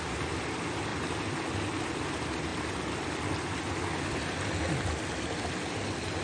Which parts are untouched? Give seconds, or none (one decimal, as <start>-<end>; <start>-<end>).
0.0-6.2